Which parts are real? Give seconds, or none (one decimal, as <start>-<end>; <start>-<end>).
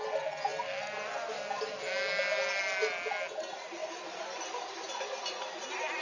0.0-6.0